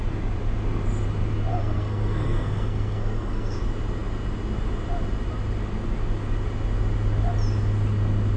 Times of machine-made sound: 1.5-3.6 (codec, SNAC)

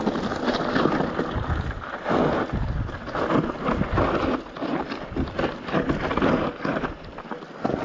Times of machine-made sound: none

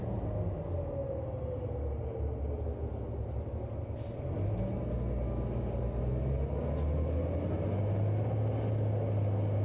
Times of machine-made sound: none

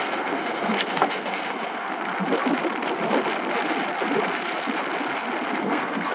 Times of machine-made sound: 0.0-1.9 (codec, SNAC); 5.6-6.1

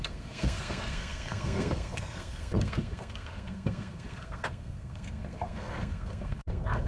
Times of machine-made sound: 0.0-6.9 (codec, SNAC)

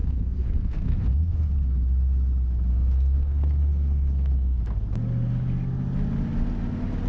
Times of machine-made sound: 0.0-1.5 (codec, SNAC); 2.7-4.6

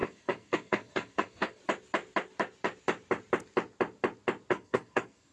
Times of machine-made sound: 0.0-1.6 (codec, SNAC); 4.5-5.3